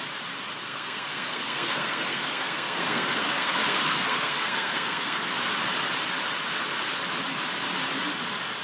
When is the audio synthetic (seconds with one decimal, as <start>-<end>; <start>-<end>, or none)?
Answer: 0.5-5.3